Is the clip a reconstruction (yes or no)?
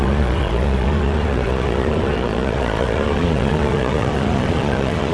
yes